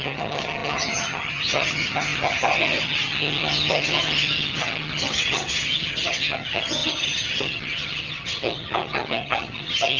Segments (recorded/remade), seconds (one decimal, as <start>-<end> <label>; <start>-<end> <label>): 0.0-10.0 remade